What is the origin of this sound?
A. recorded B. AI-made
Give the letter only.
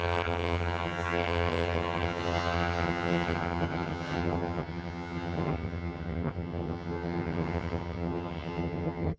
B